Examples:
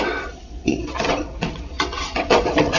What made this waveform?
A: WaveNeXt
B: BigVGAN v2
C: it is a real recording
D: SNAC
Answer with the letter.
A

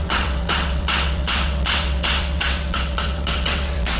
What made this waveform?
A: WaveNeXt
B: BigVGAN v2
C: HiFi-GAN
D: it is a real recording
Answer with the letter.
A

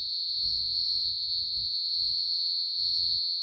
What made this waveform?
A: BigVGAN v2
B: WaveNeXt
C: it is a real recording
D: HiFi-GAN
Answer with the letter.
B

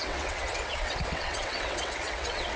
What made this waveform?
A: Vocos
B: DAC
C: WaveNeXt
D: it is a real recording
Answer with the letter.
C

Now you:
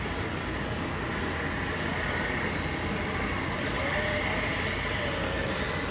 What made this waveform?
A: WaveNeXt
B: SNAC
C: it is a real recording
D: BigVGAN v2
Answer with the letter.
C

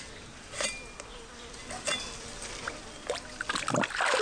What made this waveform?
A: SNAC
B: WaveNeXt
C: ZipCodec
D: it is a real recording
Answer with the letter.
D